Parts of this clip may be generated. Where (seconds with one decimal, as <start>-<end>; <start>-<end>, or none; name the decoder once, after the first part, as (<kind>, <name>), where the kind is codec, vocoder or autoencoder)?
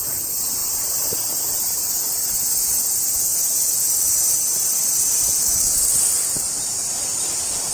0.0-7.7 (vocoder, BigVGAN v2)